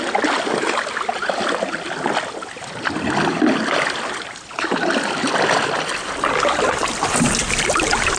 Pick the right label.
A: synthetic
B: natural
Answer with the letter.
B